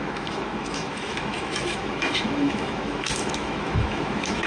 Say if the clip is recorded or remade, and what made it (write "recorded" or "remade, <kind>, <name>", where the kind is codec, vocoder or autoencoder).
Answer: remade, autoencoder, DAC-VAE